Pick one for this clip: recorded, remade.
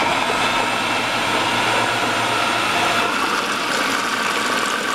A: recorded